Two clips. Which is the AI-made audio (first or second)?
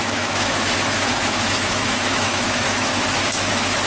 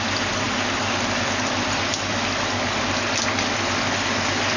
first